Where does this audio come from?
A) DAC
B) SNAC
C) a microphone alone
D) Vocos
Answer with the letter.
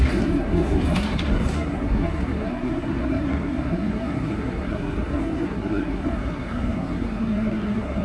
B